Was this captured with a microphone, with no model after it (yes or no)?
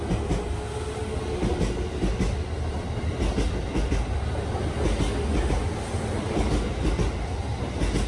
yes